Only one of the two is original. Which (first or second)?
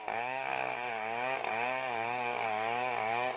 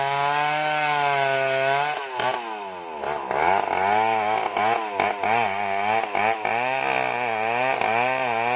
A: second